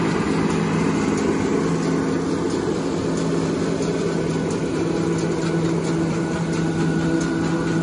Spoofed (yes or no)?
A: no